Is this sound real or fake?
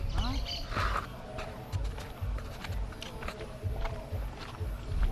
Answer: real